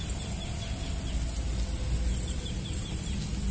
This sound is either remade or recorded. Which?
recorded